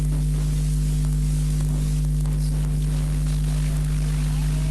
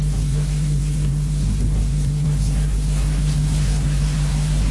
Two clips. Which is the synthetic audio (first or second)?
second